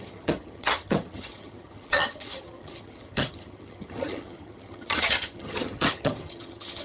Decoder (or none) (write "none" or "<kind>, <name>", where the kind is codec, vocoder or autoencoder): vocoder, HiFi-GAN